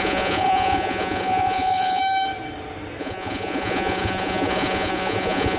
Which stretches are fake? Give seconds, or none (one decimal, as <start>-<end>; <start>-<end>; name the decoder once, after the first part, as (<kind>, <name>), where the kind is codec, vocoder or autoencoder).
0.0-2.0 (vocoder, Vocos); 3.0-5.6